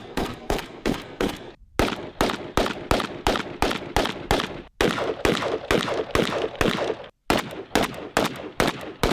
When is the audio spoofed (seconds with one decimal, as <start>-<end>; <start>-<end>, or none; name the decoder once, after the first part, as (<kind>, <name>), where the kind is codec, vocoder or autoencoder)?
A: 0.0-1.5 (codec, SNAC)